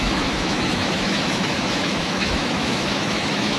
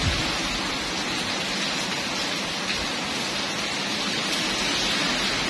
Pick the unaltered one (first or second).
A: second